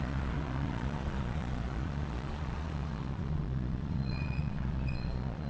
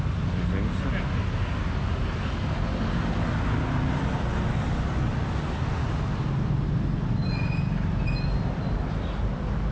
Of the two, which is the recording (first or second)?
second